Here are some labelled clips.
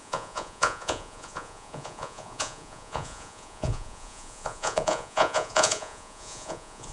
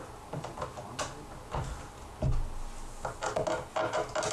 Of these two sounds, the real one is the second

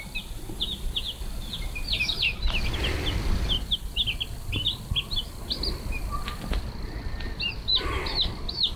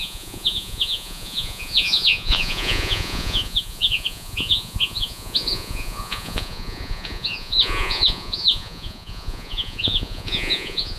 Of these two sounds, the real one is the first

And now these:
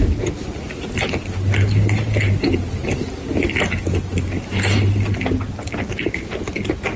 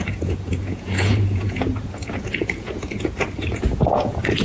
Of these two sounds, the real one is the first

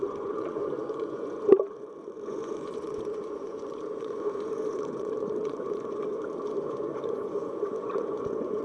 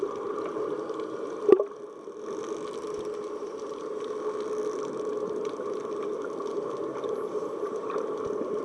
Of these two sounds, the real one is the second